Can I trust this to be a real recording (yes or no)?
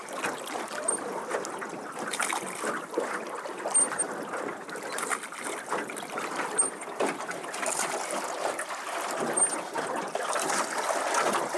yes